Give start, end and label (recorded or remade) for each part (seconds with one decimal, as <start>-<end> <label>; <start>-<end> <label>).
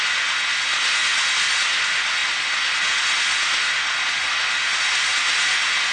0.0-5.9 recorded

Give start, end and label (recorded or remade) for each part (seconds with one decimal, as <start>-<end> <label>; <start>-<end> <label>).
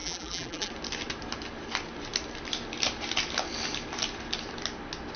0.0-0.7 remade; 0.7-5.2 recorded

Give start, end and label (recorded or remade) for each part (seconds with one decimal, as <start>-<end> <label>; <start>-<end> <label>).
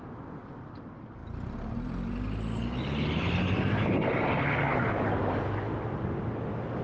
0.0-6.8 recorded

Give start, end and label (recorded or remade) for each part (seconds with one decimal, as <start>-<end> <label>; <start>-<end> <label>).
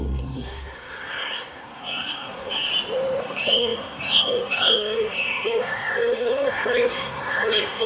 0.0-2.7 remade; 2.7-3.2 recorded; 3.2-7.9 remade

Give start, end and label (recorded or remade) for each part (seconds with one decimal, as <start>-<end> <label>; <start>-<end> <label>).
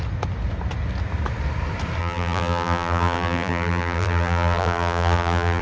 0.0-2.0 recorded; 2.0-5.6 remade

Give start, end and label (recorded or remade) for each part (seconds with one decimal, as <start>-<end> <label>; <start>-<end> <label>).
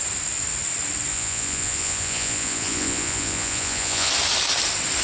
0.0-1.1 recorded; 1.1-4.1 remade; 4.1-5.0 recorded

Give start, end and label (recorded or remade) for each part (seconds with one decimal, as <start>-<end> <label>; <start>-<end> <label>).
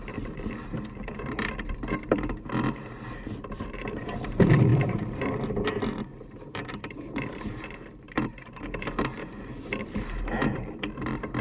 0.0-11.4 remade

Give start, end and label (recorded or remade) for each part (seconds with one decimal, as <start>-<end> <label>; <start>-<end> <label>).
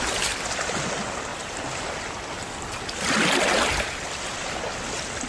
0.0-5.3 recorded